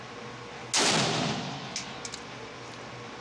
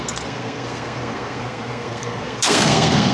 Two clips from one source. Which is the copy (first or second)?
second